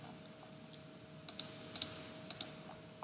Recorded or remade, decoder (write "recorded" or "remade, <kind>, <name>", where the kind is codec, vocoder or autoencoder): recorded